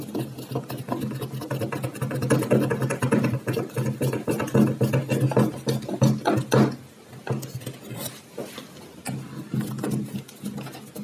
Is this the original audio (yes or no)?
yes